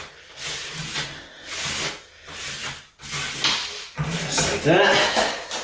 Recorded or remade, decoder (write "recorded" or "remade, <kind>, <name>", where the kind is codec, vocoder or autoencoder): recorded